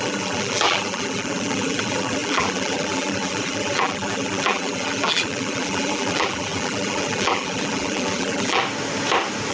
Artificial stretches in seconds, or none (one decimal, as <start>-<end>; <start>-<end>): 0.0-8.6